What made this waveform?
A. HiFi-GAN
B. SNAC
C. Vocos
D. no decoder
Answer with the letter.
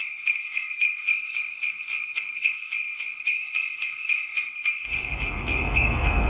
B